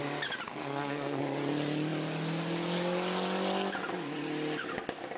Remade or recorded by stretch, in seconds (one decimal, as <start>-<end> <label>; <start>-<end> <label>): 0.0-0.6 recorded; 0.6-1.2 remade; 1.2-5.2 recorded